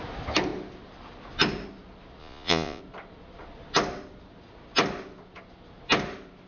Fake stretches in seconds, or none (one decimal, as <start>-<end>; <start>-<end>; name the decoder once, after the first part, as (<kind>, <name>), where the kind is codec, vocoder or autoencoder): 2.2-2.8 (vocoder, Vocos)